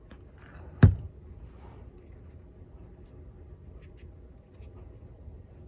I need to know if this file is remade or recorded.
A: recorded